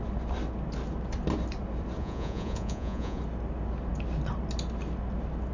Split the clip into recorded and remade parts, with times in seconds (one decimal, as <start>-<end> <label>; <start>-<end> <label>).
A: 0.0-2.0 recorded; 2.0-3.2 remade; 3.2-5.5 recorded